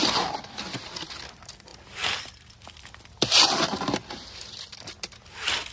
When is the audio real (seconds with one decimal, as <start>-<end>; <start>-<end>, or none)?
0.0-5.7